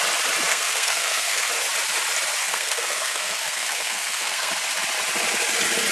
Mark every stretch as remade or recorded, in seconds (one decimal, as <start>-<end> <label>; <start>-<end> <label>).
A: 0.0-0.5 recorded; 0.5-1.5 remade; 1.5-2.4 recorded; 2.4-4.5 remade; 4.5-5.9 recorded